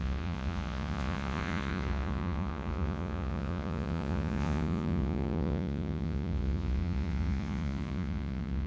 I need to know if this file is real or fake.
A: fake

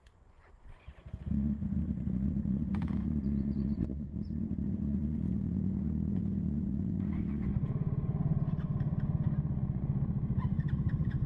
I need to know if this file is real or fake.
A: fake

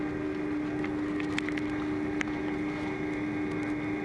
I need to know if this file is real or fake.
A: real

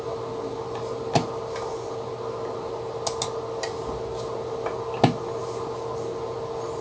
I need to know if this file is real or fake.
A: real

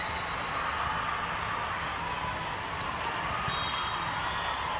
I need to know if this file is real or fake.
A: real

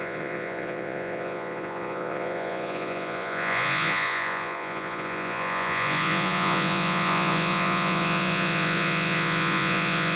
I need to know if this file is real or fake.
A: fake